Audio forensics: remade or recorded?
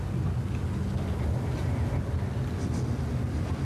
recorded